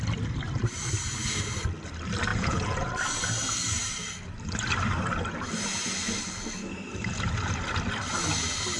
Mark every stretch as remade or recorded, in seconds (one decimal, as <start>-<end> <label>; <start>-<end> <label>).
0.0-2.3 recorded; 2.3-2.9 remade; 2.9-8.8 recorded